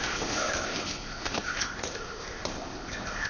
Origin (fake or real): fake